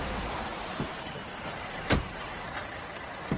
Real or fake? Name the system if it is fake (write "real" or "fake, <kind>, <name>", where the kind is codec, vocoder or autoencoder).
fake, vocoder, BigVGAN v2